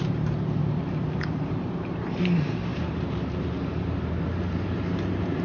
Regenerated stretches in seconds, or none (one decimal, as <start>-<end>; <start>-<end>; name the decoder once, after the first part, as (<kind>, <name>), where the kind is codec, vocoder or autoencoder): 0.0-0.6 (vocoder, BigVGAN v2); 1.3-5.4